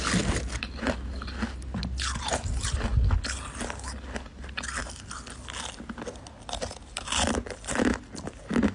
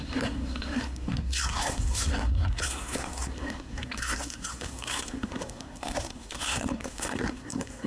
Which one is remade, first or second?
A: second